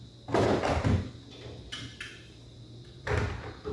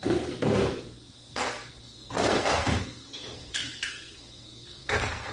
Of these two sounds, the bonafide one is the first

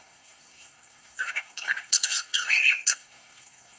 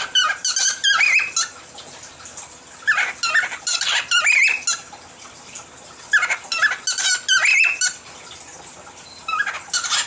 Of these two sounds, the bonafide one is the second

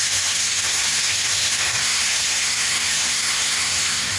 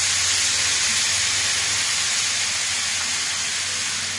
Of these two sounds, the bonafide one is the second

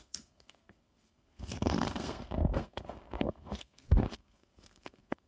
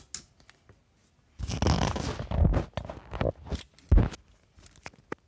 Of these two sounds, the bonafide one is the second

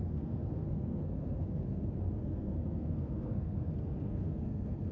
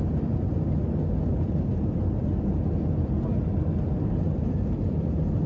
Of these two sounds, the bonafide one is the second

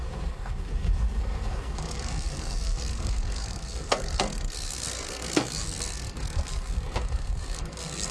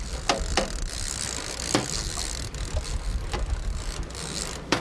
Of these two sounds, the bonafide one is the second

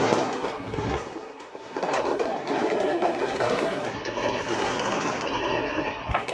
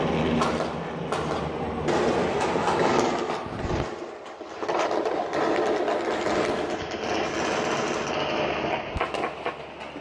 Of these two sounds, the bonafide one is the second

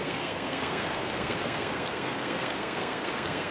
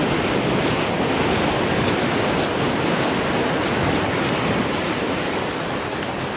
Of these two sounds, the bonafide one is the second